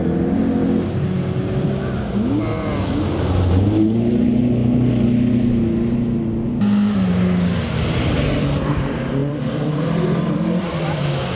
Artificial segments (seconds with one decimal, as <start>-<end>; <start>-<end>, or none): 9.2-11.0